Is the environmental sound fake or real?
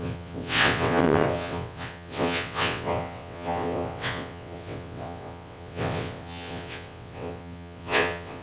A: fake